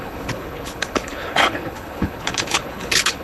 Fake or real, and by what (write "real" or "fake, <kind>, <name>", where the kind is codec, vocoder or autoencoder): fake, codec, HILCodec